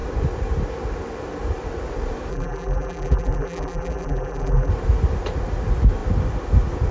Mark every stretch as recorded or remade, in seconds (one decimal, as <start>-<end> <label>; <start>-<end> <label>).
0.0-2.3 recorded; 2.3-4.7 remade; 4.7-6.9 recorded